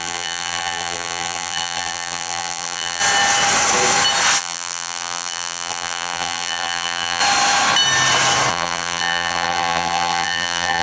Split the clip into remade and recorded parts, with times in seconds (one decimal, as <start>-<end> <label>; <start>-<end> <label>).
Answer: 0.0-3.0 remade; 3.0-4.4 recorded; 4.4-7.2 remade; 7.2-8.5 recorded; 8.5-10.8 remade